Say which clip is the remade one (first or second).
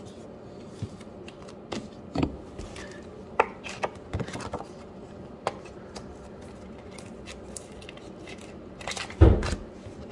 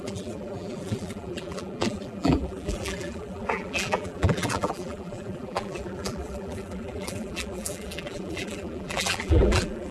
second